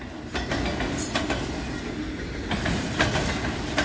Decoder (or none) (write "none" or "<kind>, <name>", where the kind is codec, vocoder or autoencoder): none